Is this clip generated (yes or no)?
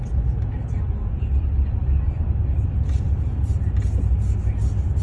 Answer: no